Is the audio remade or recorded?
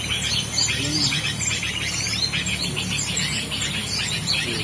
recorded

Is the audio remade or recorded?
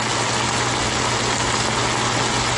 recorded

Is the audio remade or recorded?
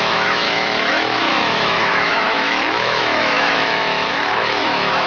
remade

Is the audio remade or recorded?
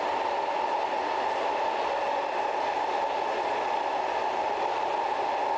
recorded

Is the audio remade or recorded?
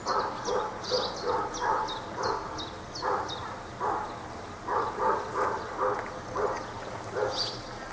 recorded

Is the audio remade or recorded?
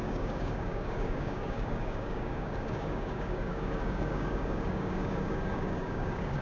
remade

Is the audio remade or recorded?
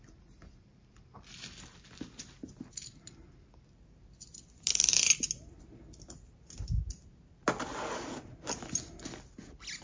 recorded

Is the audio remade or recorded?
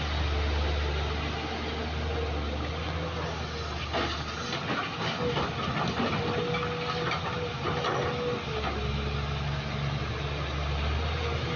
recorded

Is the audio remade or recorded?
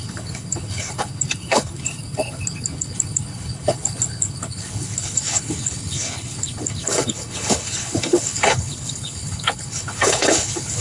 remade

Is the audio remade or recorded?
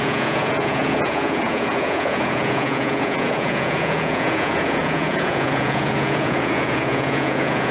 remade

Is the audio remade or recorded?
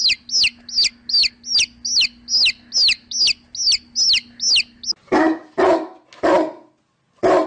recorded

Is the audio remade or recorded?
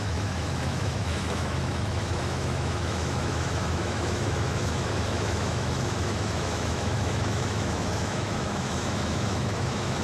remade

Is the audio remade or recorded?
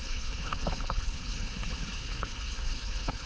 remade